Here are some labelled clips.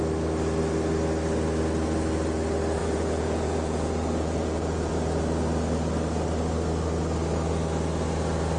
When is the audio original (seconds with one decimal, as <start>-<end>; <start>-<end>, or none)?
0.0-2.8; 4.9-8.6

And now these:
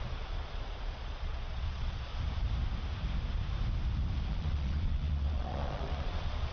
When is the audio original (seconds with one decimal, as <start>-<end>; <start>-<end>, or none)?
2.1-4.3

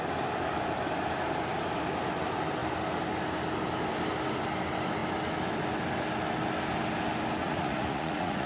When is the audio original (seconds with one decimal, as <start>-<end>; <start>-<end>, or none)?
0.0-7.4